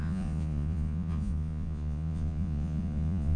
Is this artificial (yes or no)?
yes